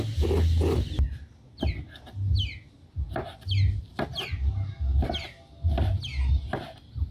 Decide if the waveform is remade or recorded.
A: recorded